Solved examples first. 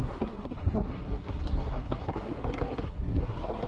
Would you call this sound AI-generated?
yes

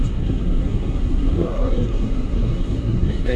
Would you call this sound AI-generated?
yes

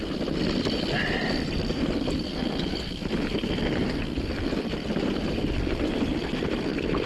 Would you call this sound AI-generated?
no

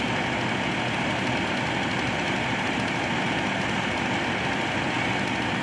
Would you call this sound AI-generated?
no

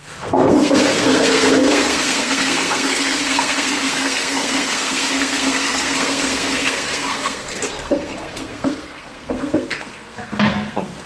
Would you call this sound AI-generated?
yes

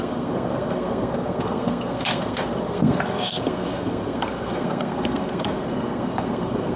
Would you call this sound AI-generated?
yes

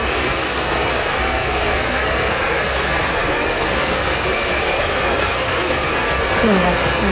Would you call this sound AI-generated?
yes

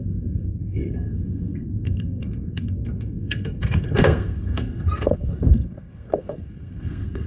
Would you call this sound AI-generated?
yes